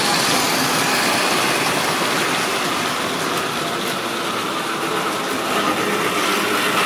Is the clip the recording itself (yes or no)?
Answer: yes